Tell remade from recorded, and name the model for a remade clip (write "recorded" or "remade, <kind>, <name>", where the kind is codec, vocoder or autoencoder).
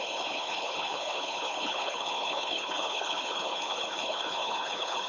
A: remade, codec, HILCodec